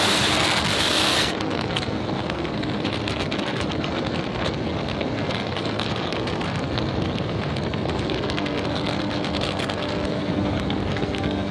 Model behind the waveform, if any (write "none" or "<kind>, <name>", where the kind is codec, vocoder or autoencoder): codec, SNAC